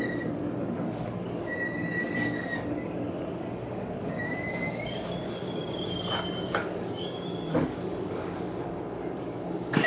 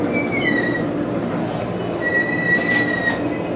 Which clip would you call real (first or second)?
second